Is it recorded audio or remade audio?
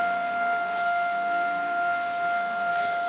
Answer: remade